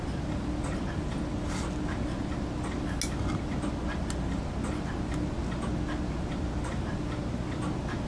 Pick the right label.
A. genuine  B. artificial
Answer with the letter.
A